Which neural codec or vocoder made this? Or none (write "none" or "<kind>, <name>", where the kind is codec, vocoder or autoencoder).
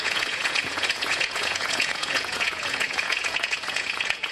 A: vocoder, Vocos